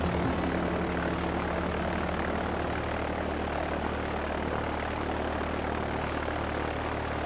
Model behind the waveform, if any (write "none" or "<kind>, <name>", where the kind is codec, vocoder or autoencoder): none